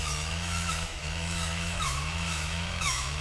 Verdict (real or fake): fake